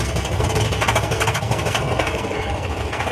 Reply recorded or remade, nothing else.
remade